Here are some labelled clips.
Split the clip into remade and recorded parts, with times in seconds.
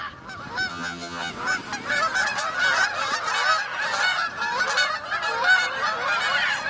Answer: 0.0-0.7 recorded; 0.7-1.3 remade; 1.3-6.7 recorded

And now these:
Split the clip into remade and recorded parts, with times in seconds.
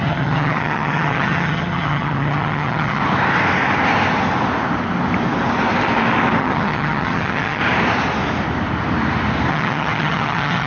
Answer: 0.0-3.0 remade; 3.0-6.4 recorded; 6.4-7.6 remade; 7.6-9.5 recorded; 9.5-10.7 remade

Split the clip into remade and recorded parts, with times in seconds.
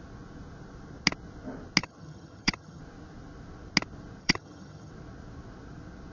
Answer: 0.0-1.8 recorded; 1.8-2.8 remade; 2.8-4.2 recorded; 4.2-4.9 remade; 4.9-6.1 recorded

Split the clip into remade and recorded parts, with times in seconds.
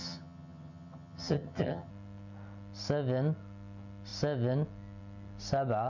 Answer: 0.0-1.9 remade; 1.9-5.9 recorded